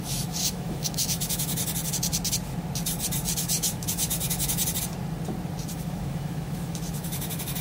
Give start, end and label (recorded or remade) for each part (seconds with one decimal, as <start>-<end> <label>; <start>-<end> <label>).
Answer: 0.0-1.6 remade; 1.6-3.4 recorded; 3.4-4.6 remade; 4.6-5.7 recorded; 5.7-7.6 remade